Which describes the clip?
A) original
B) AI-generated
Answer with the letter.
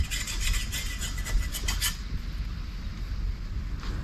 A